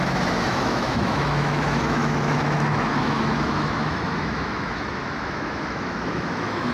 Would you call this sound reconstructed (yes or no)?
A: yes